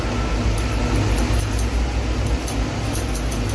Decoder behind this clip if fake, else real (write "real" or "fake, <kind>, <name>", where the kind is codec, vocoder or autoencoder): real